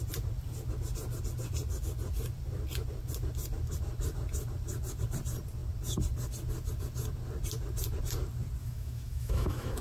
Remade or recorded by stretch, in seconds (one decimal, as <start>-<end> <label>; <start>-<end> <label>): 0.0-8.6 recorded; 8.6-9.8 remade